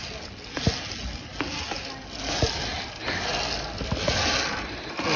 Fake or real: real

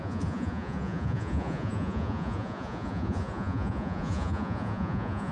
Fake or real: fake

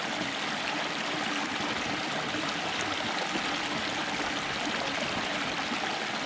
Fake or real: real